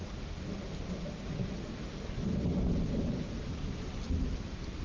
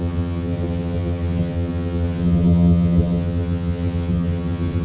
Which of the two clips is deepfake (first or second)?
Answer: second